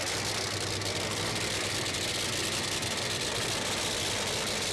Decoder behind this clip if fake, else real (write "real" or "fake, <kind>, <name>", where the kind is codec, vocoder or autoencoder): real